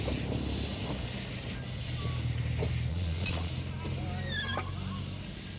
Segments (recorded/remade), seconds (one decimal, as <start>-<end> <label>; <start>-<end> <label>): 0.0-2.9 recorded; 2.9-3.5 remade; 3.5-5.6 recorded